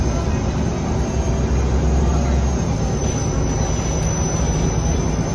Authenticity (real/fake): real